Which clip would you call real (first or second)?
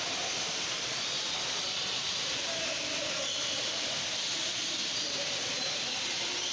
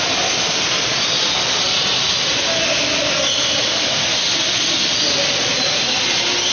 second